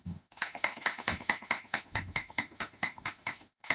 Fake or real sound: fake